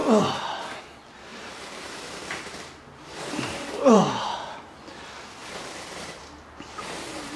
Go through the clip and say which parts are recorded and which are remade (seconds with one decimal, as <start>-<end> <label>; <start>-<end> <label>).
0.0-1.3 recorded; 1.3-4.2 remade; 4.2-5.4 recorded; 5.4-6.2 remade; 6.2-7.4 recorded